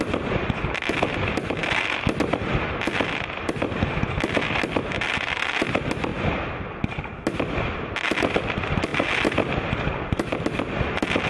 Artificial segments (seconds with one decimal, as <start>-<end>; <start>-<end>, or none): none